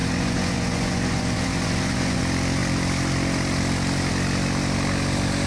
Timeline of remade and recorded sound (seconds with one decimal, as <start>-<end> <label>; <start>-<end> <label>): 0.0-2.2 remade; 2.2-5.5 recorded